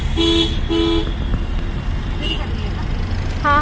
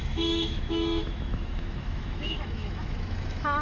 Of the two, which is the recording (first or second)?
first